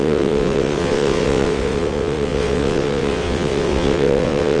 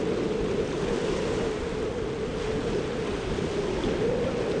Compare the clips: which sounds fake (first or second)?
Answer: first